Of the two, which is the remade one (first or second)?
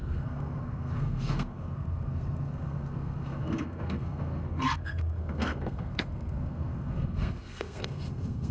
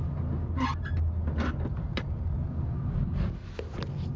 first